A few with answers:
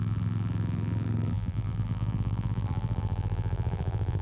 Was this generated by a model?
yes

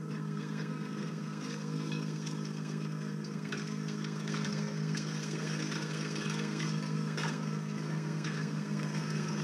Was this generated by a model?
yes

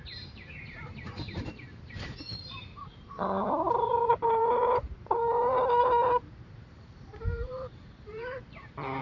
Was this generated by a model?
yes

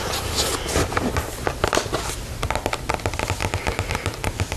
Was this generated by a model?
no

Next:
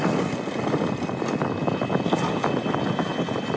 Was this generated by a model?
no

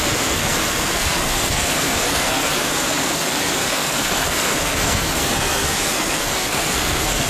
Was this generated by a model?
yes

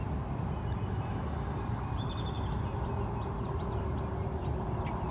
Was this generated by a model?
no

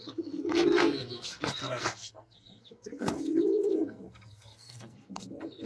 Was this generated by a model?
yes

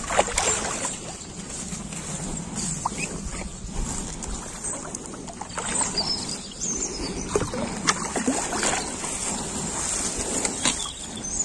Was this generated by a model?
no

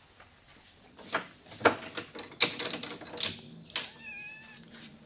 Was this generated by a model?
no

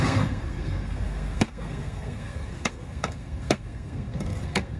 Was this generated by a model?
yes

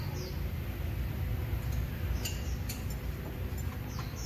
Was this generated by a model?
no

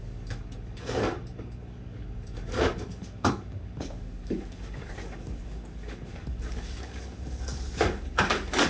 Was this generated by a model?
yes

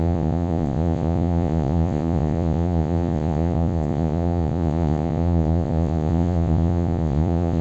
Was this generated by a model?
yes